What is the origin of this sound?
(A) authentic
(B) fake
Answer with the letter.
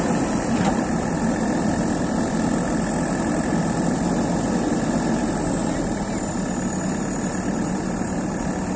A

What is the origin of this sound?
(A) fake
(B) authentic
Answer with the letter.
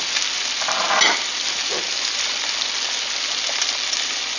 B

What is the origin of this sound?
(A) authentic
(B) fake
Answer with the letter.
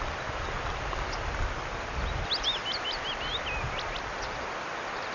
A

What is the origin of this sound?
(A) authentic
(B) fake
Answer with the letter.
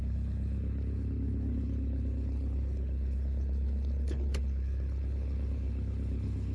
B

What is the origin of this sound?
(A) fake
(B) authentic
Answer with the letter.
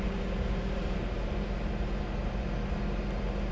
B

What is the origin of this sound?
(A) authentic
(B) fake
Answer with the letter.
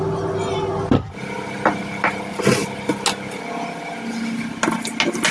A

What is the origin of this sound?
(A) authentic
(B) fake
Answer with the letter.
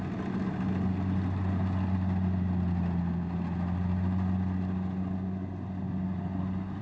A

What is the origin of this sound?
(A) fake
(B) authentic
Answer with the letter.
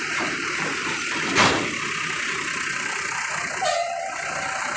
B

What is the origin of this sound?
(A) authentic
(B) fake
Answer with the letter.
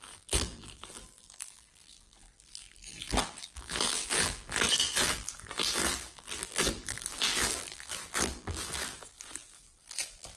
B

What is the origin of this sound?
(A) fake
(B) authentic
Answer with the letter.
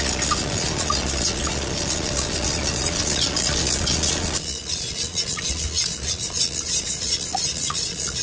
A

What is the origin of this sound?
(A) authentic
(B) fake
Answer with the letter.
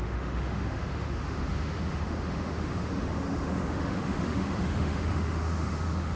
B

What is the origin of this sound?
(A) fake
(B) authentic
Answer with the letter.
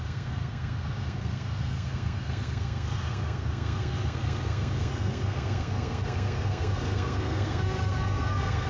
A